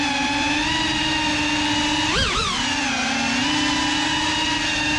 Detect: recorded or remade recorded